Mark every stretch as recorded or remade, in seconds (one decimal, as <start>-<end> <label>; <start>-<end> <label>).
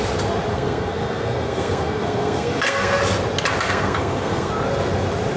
0.0-0.5 recorded; 0.5-3.0 remade; 3.0-3.5 recorded; 3.5-4.5 remade; 4.5-5.4 recorded